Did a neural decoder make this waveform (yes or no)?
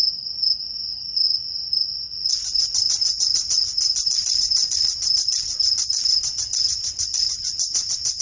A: no